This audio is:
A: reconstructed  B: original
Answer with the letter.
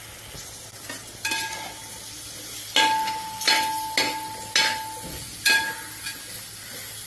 B